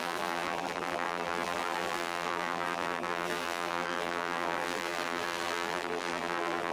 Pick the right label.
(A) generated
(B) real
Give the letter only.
A